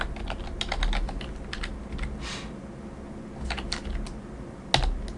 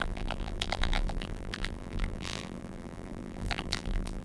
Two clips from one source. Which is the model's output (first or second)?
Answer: second